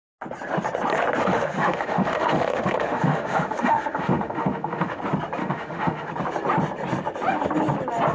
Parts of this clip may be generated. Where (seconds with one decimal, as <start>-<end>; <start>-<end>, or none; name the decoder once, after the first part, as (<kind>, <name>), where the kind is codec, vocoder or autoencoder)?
1.2-5.0 (autoencoder, DAC-VAE); 5.4-6.1